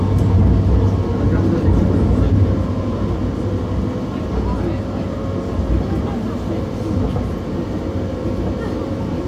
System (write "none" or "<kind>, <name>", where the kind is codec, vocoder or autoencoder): none